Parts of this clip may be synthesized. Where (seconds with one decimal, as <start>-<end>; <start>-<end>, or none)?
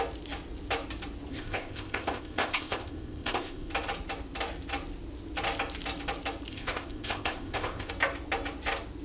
1.3-3.7; 6.5-7.9